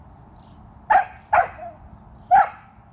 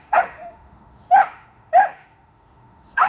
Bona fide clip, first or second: first